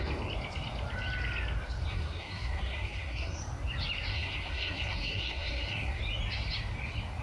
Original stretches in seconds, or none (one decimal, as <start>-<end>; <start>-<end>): 0.0-1.9; 3.4-4.1; 6.0-7.2